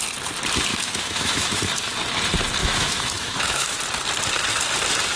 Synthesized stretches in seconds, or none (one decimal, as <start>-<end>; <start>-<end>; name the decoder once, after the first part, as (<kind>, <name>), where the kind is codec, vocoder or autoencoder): 0.7-1.6 (autoencoder, DAC-VAE); 2.6-3.8